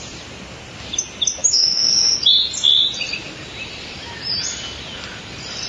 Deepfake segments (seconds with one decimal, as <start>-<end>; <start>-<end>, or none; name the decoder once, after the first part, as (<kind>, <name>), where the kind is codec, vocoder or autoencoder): 1.4-1.9 (autoencoder, DAC-VAE)